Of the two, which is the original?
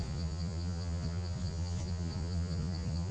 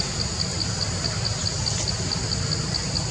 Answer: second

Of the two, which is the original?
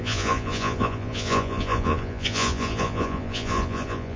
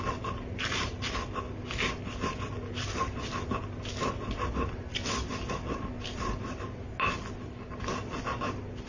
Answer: second